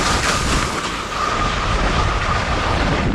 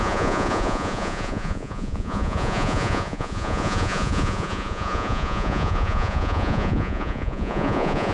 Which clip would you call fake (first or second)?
second